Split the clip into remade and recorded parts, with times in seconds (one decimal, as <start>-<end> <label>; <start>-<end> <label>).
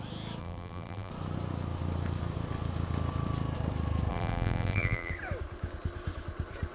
0.0-0.4 recorded; 0.4-1.1 remade; 1.1-4.1 recorded; 4.1-5.1 remade; 5.1-6.7 recorded